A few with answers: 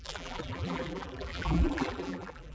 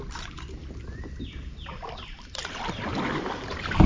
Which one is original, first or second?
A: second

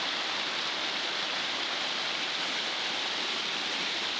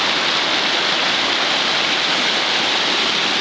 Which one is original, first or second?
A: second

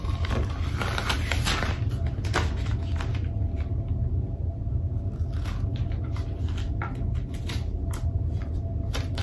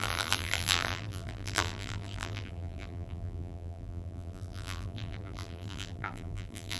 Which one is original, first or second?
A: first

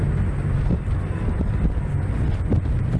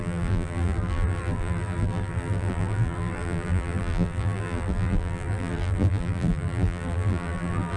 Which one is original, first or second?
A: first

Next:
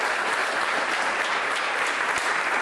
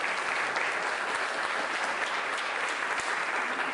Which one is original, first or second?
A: second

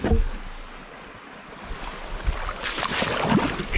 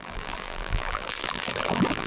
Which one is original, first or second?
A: first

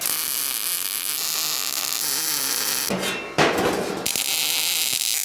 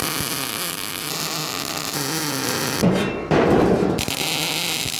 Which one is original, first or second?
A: first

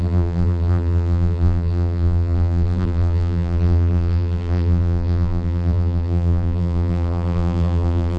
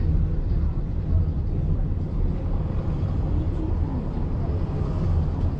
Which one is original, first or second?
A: second